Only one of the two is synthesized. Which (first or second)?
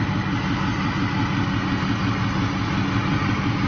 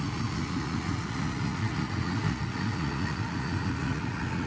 second